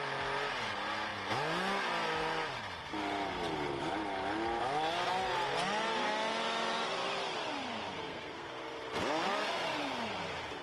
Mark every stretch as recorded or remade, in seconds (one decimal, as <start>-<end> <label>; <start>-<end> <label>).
0.0-7.9 recorded; 7.9-8.6 remade; 8.6-10.6 recorded